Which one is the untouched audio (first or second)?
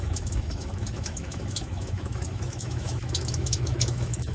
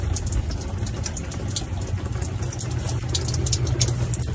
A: second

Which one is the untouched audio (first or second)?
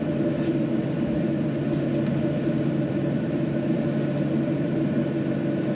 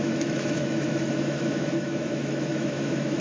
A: first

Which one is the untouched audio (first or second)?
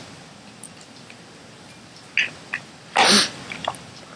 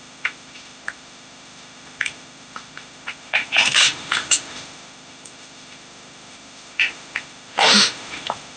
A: first